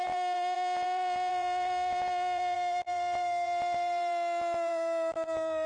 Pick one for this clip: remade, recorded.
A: remade